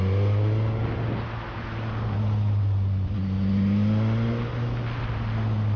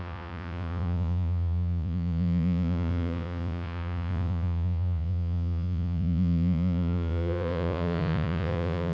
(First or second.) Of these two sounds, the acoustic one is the first